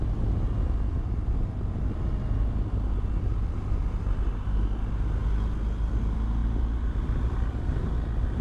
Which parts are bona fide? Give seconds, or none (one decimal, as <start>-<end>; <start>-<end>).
4.8-6.4; 7.9-8.4